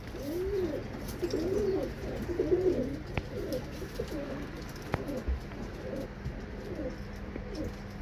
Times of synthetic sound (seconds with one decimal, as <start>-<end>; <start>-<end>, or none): none